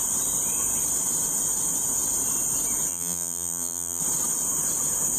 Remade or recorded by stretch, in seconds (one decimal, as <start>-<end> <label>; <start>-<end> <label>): 0.0-2.9 recorded; 2.9-4.0 remade; 4.0-5.2 recorded